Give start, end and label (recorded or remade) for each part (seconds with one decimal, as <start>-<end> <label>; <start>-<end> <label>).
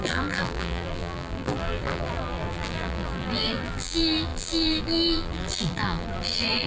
0.0-6.7 remade